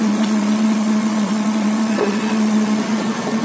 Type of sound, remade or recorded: remade